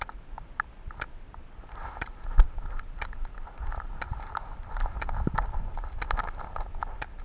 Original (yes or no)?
yes